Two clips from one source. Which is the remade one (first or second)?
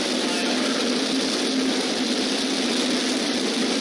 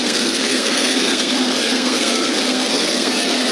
second